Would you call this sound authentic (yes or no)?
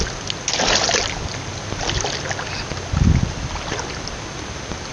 yes